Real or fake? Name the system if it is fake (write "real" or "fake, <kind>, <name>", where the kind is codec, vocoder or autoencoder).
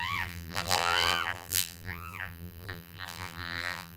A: fake, vocoder, BigVGAN v2